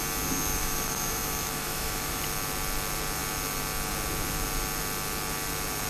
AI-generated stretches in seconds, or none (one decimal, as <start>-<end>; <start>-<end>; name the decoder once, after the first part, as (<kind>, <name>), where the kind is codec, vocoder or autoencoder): 0.6-2.2 (autoencoder, DAC-VAE)